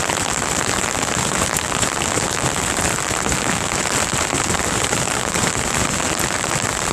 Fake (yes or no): no